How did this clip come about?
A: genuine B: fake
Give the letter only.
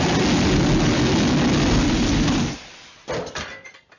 A